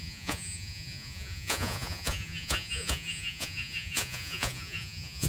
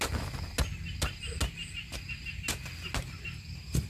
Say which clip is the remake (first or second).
first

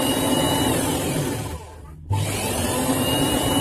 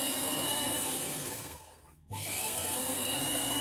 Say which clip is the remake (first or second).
second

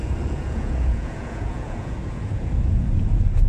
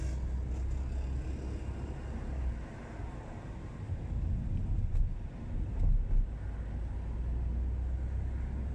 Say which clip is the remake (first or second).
first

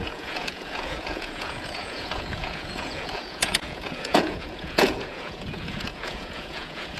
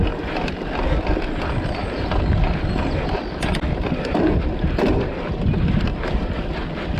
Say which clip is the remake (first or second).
first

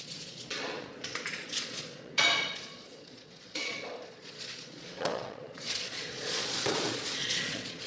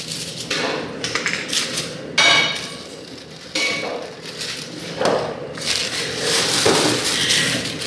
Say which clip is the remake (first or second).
first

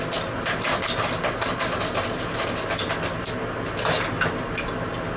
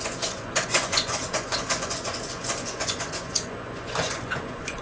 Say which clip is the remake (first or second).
second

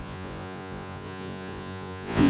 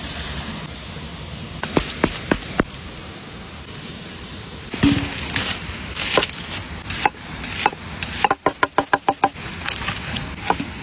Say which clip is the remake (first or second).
first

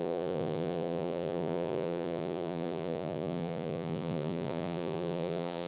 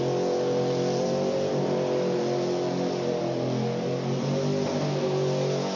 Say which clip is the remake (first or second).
first